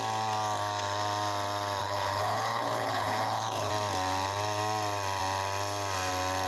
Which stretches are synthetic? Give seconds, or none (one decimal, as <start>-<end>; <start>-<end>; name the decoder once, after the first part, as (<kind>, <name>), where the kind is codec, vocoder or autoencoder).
1.8-3.7 (codec, HILCodec)